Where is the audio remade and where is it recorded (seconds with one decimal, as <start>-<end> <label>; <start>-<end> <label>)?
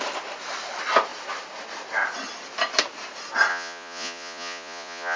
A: 0.0-3.5 recorded; 3.5-5.2 remade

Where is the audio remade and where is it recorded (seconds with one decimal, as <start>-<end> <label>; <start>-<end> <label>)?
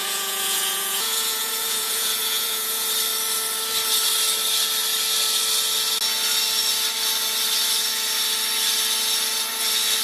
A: 0.0-2.9 remade; 2.9-10.0 recorded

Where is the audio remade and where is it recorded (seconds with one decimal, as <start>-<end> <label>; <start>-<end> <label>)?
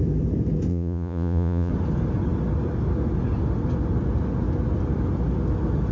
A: 0.0-0.7 recorded; 0.7-1.7 remade; 1.7-5.9 recorded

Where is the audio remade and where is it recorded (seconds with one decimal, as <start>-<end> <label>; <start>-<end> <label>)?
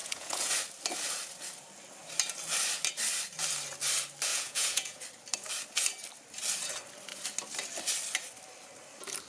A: 0.0-0.5 remade; 0.5-4.3 recorded; 4.3-5.0 remade; 5.0-9.3 recorded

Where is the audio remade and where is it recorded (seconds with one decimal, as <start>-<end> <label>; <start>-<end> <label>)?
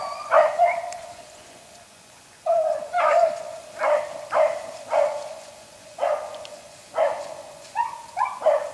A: 0.0-3.6 remade; 3.6-4.8 recorded; 4.8-8.7 remade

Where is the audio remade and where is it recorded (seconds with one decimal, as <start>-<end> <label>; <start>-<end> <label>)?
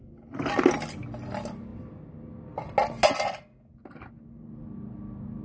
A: 0.0-5.4 recorded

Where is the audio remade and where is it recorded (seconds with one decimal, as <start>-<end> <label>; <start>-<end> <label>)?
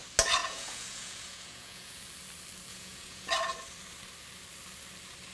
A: 0.0-0.4 recorded; 0.4-2.0 remade; 2.0-2.7 recorded; 2.7-3.3 remade; 3.3-5.3 recorded